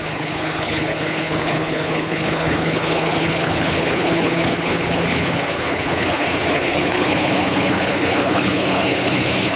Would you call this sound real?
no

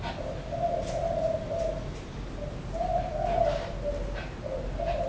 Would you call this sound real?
yes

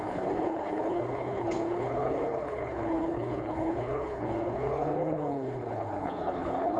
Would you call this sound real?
no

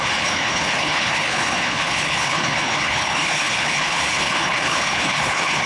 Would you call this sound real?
no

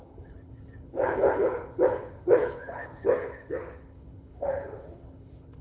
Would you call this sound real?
no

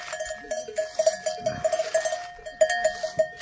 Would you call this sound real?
yes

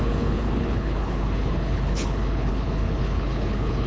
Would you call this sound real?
no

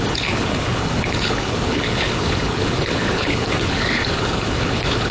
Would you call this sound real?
no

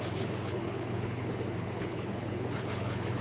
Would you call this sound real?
no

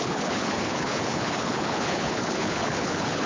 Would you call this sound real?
no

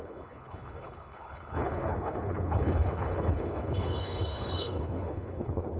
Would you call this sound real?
no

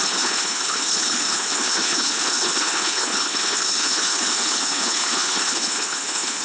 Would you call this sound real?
no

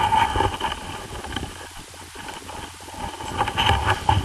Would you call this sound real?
yes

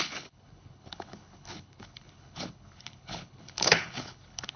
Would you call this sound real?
no